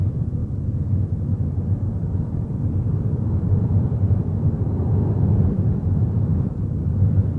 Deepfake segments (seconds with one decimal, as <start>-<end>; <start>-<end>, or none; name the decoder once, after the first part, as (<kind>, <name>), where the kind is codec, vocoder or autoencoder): 0.4-3.7 (vocoder, BigVGAN v2); 6.3-7.4